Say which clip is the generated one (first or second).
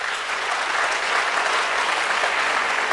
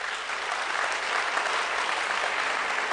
first